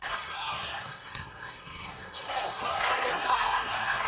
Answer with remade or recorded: remade